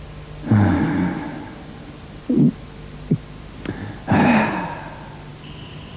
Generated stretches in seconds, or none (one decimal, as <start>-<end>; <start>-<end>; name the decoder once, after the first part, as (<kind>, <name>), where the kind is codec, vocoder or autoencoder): none